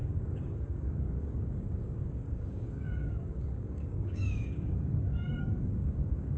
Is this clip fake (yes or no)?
yes